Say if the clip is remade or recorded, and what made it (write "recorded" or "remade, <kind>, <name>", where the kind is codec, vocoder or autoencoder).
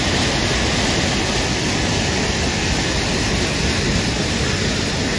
recorded